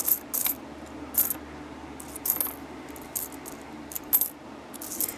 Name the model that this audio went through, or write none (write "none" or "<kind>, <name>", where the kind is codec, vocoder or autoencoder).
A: none